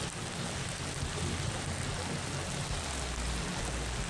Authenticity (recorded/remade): recorded